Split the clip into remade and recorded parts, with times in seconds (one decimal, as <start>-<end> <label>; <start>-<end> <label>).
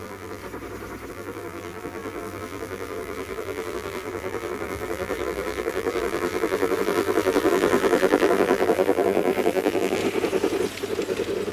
0.0-0.4 remade; 0.4-1.1 recorded; 1.1-10.0 remade; 10.0-11.5 recorded